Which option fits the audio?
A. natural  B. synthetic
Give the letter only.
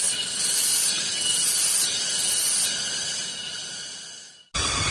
A